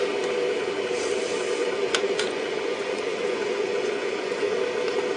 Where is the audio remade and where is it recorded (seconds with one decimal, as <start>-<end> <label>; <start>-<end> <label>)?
0.0-1.6 recorded; 1.6-4.6 remade; 4.6-5.2 recorded